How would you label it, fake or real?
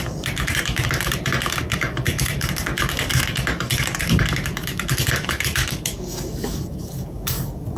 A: fake